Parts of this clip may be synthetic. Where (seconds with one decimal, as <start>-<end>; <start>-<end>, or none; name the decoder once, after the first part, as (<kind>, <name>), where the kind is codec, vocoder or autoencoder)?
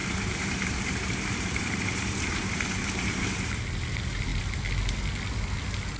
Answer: 0.0-3.6 (vocoder, BigVGAN v2)